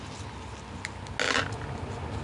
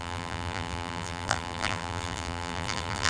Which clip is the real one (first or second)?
first